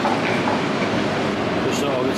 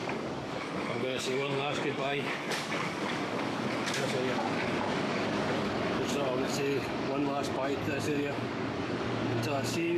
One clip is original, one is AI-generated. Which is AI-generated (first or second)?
second